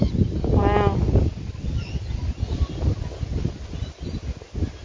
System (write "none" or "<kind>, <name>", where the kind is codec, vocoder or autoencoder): none